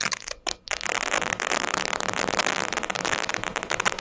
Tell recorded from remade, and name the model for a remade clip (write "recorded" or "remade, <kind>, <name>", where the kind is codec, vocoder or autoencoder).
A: recorded